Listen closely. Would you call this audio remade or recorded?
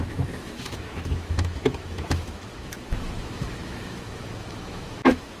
remade